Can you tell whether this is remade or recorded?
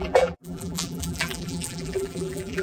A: remade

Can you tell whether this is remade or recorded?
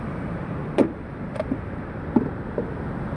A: remade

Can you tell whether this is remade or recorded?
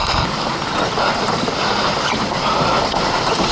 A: recorded